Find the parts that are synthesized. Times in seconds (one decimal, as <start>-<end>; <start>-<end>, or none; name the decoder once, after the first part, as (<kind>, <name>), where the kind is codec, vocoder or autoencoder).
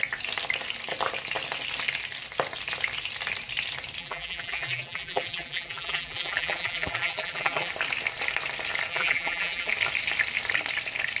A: 4.0-7.7 (vocoder, BigVGAN v2); 8.9-9.7